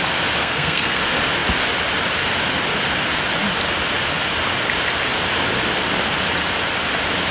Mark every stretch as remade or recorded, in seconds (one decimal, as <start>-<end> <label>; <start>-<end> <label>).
0.0-0.4 recorded; 0.4-1.0 remade; 1.0-7.3 recorded